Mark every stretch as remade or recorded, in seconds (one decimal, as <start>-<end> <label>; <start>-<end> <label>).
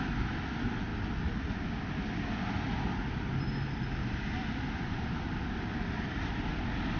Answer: 0.0-4.0 recorded; 4.0-6.6 remade; 6.6-7.0 recorded